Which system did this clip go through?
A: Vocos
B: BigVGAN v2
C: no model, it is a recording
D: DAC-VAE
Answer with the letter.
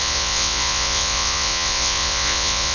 A